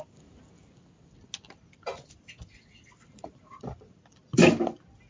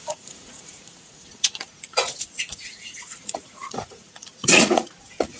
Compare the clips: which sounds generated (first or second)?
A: second